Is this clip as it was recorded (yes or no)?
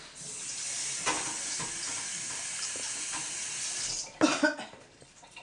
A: yes